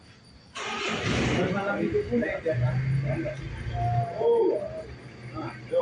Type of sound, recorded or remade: recorded